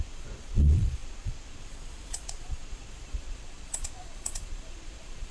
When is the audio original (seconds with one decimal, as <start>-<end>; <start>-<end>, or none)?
none